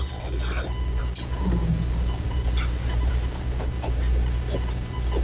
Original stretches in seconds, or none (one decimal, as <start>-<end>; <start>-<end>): 0.0-5.2